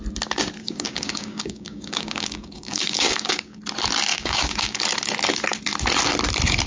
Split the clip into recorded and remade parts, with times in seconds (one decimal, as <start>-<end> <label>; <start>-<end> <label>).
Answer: 0.0-0.6 recorded; 0.6-3.6 remade; 3.6-4.1 recorded; 4.1-4.8 remade; 4.8-6.7 recorded